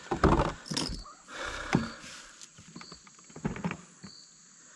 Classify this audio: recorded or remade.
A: recorded